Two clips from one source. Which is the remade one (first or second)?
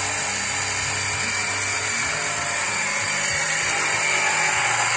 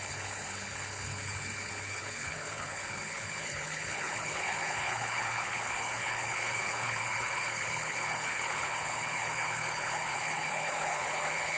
second